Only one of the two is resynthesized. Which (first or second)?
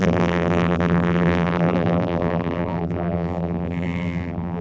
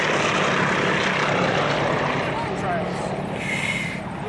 first